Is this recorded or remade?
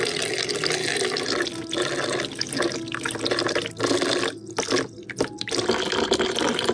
recorded